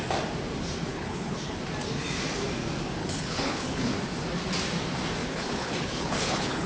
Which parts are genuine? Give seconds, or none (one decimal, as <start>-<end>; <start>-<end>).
0.0-0.9; 1.6-3.0; 3.9-5.2